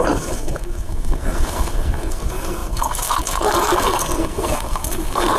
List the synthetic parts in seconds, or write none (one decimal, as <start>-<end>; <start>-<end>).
0.0-5.4